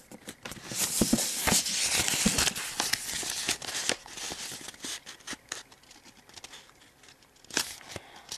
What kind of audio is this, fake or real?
real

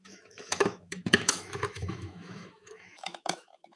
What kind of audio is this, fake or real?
fake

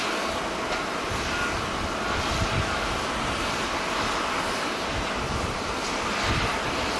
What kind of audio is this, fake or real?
real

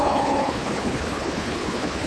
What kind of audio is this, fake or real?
fake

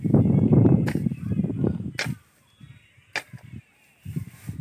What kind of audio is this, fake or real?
real